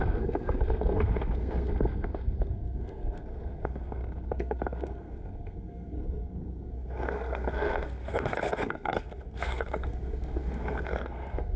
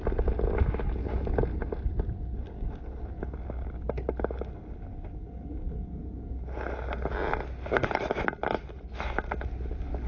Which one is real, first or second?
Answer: second